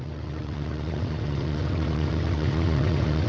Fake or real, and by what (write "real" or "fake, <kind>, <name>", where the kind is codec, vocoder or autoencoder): fake, vocoder, WaveNeXt